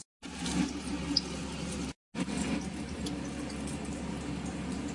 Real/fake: real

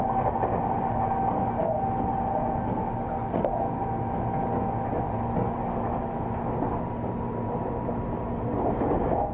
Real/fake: real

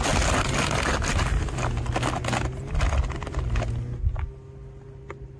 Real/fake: real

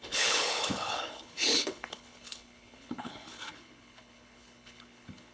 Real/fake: fake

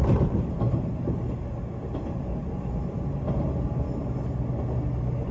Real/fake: real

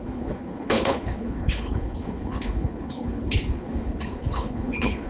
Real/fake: fake